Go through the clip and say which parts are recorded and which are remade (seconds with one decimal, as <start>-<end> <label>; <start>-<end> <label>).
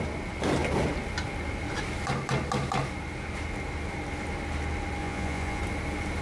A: 0.0-5.0 recorded; 5.0-5.6 remade; 5.6-6.2 recorded